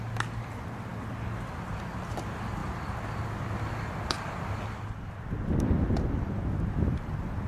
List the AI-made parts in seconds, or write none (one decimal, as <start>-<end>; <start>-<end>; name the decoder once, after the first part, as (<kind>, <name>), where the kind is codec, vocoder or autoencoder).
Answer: none